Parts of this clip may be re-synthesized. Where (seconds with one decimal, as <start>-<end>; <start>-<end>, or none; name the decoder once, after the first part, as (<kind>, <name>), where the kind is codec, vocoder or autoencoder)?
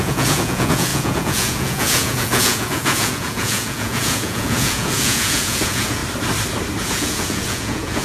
0.0-6.0 (vocoder, Vocos); 6.8-8.0